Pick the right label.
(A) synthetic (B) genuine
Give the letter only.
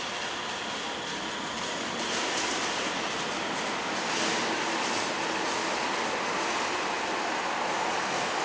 B